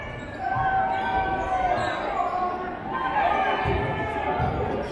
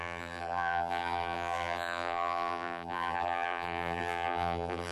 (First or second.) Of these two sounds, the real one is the first